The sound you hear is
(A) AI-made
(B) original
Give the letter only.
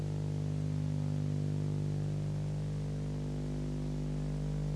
B